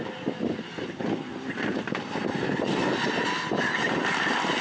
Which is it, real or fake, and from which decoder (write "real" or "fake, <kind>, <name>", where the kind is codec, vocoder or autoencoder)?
real